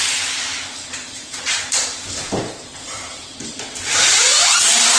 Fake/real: fake